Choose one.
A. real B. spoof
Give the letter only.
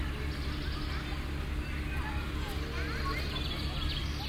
A